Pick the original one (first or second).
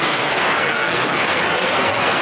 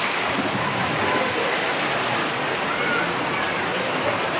second